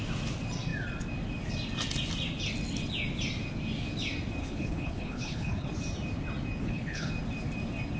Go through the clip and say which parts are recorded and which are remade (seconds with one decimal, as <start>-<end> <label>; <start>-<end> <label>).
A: 0.0-4.4 recorded; 4.4-5.7 remade; 5.7-6.6 recorded; 6.6-7.1 remade; 7.1-8.0 recorded